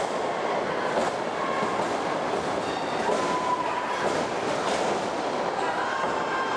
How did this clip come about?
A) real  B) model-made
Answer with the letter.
A